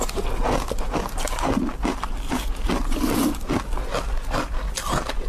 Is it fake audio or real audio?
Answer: real